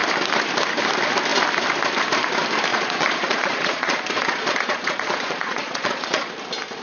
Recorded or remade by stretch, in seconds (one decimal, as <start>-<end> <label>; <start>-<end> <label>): 0.0-2.7 recorded; 2.7-6.3 remade; 6.3-6.8 recorded